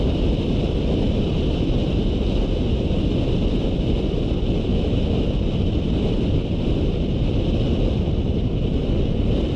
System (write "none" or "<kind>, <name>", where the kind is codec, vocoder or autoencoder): none